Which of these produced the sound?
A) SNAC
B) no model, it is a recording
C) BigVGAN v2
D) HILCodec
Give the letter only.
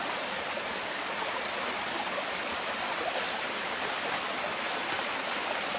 B